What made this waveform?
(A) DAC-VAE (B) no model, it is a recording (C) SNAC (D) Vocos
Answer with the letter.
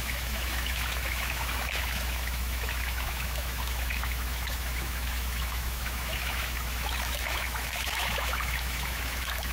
A